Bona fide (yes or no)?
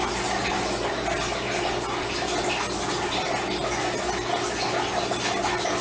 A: yes